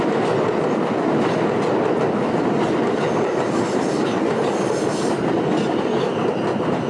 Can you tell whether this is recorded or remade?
recorded